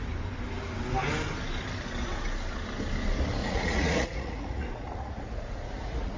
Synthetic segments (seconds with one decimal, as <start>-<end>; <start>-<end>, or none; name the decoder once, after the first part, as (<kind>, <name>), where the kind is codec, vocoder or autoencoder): 3.4-6.2 (vocoder, Vocos)